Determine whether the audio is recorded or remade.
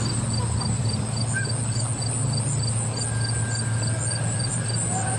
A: recorded